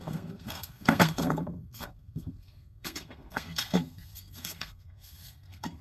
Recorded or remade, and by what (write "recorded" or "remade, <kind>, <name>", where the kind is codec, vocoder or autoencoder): remade, codec, SNAC